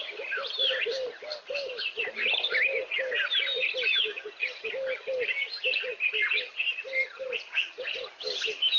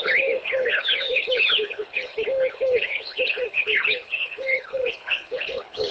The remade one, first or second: second